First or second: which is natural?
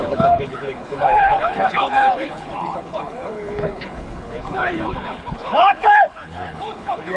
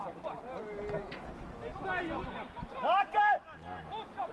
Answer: second